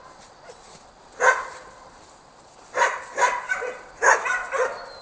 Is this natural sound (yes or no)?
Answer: yes